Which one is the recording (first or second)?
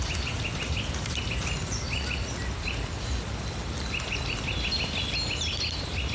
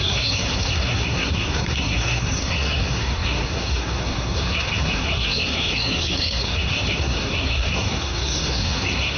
first